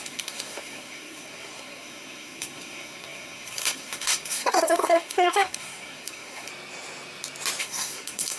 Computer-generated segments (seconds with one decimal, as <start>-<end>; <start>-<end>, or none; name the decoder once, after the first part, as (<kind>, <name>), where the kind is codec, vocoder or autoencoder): 0.0-6.5 (codec, SNAC); 7.6-8.4